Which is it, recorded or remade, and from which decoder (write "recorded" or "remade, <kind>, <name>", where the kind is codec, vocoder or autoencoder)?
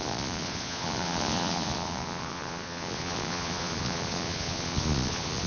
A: remade, vocoder, Vocos